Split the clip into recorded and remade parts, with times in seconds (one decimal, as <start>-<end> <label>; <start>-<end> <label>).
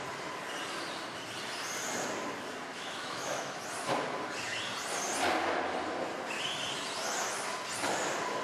0.0-2.7 recorded; 2.7-3.6 remade; 3.6-8.4 recorded